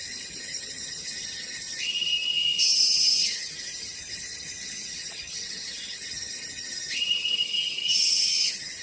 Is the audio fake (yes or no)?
yes